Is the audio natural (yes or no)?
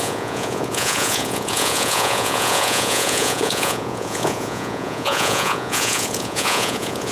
no